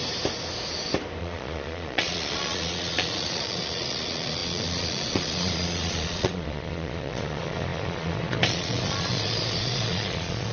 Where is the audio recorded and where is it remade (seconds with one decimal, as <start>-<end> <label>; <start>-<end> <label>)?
0.0-1.2 recorded; 1.2-10.5 remade

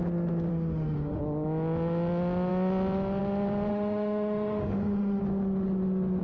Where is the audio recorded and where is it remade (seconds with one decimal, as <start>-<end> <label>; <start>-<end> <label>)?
0.0-0.5 recorded; 0.5-1.2 remade; 1.2-3.7 recorded; 3.7-5.2 remade; 5.2-6.2 recorded